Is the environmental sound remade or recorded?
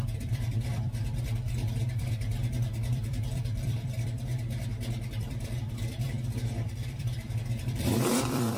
remade